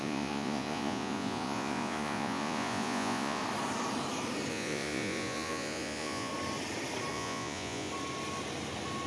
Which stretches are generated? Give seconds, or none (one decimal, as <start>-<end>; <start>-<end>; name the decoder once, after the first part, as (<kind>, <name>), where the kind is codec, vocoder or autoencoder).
0.0-3.4 (vocoder, Vocos); 4.5-6.3; 7.1-7.9